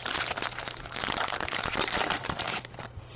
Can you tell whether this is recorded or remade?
remade